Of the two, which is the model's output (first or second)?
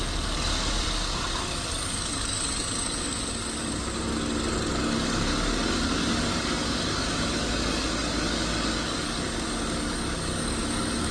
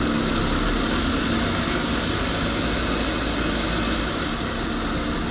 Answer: first